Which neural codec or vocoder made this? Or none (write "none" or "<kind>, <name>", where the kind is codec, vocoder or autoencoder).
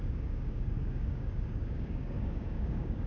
codec, DAC